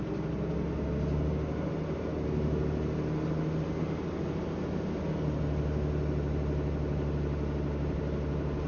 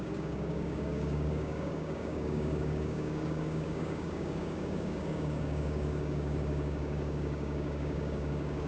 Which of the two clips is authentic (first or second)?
first